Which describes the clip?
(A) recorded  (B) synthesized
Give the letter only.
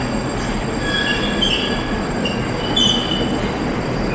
A